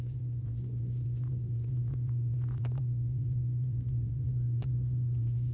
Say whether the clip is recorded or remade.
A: remade